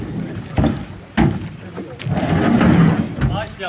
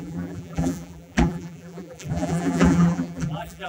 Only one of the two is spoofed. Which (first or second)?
second